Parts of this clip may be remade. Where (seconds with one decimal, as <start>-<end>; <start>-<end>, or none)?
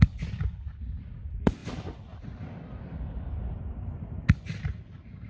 none